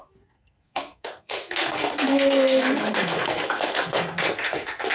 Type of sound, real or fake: fake